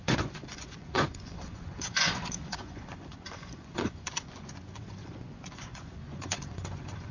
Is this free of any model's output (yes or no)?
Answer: no